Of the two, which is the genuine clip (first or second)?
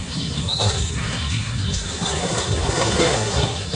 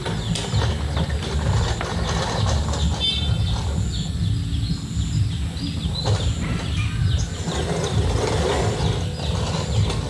second